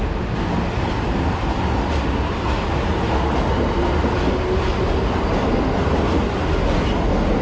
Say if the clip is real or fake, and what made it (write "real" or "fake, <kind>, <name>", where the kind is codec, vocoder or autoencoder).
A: real